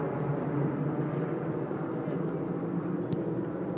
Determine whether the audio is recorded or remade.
recorded